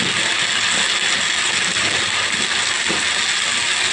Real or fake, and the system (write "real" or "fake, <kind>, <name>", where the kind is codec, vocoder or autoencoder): real